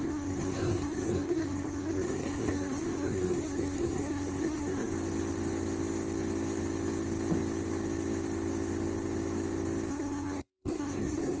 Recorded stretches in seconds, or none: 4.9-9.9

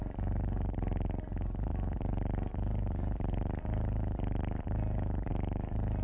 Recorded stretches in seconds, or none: 0.0-6.0

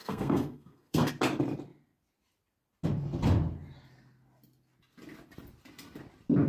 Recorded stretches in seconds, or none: 1.1-6.5

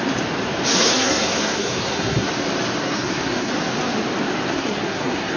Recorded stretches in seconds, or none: 0.0-0.7; 2.3-2.8; 3.5-4.5

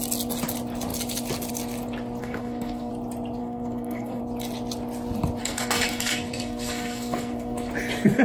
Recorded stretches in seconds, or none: 0.0-2.2; 2.9-3.4; 4.2-5.4; 7.7-8.2

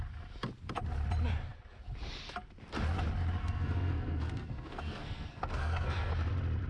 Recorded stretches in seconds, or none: 0.0-3.4; 6.1-6.7

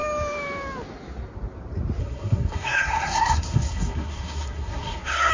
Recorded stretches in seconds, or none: 0.0-2.0